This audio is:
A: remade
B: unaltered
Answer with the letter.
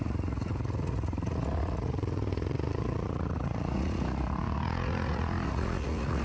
A